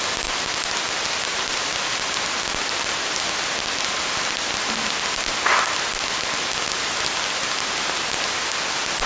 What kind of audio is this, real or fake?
real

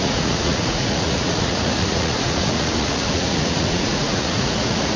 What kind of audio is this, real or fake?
fake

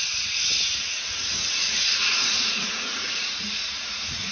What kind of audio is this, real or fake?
fake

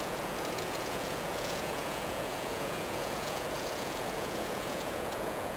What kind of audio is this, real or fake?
fake